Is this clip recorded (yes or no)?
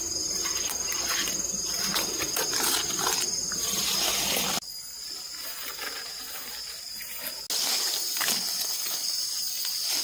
yes